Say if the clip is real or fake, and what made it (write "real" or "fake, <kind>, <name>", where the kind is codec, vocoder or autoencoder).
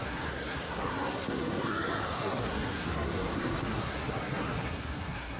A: fake, codec, SNAC